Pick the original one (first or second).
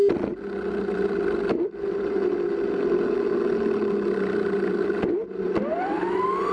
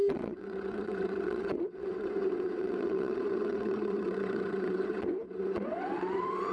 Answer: first